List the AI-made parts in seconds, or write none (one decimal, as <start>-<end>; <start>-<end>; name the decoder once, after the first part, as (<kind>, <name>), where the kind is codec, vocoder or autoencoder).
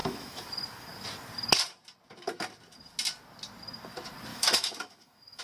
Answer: 0.0-0.5 (autoencoder, DAC-VAE); 4.3-5.4